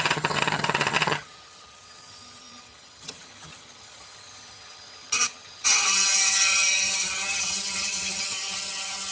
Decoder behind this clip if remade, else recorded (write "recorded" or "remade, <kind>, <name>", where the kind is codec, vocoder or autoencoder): remade, vocoder, HiFi-GAN